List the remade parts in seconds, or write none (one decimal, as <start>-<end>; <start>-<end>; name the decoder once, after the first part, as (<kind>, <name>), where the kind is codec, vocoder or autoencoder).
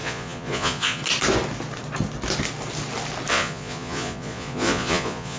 0.0-1.0 (vocoder, Vocos); 3.3-5.4